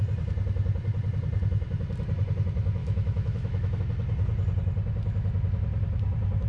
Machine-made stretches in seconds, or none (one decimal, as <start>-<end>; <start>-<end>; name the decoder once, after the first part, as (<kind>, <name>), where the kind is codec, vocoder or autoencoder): 2.8-3.8 (autoencoder, DAC-VAE)